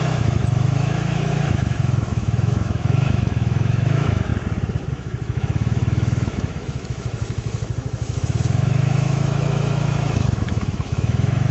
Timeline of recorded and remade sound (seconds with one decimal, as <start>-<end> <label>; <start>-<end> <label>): 0.0-4.3 remade; 4.3-4.9 recorded; 4.9-11.5 remade